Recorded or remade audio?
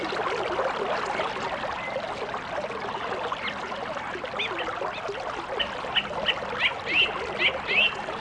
recorded